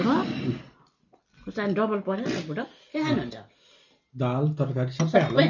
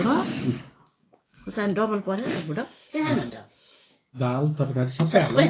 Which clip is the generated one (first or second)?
second